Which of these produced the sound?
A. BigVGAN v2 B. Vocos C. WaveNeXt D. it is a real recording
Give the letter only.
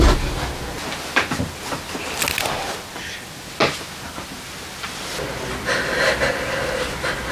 D